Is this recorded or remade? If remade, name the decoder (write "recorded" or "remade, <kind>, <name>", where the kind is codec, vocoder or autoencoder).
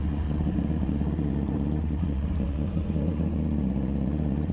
remade, vocoder, Vocos